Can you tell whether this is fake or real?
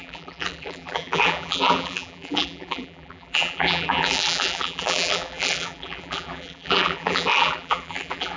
fake